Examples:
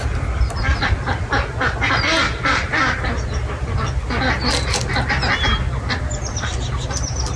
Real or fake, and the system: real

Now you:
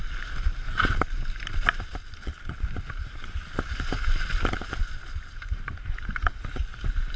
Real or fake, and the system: real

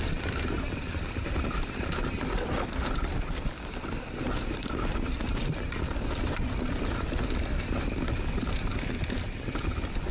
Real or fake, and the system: real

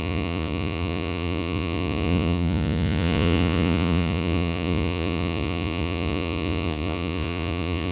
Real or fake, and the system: fake, vocoder, Vocos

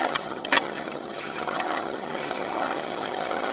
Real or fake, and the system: fake, vocoder, HiFi-GAN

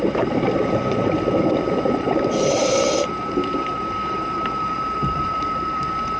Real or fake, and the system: fake, vocoder, BigVGAN v2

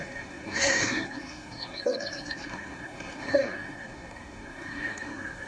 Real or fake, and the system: fake, codec, SNAC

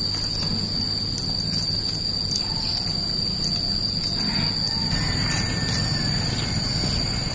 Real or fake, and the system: real